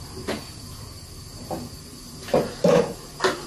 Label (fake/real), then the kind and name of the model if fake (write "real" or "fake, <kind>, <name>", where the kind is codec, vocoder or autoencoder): real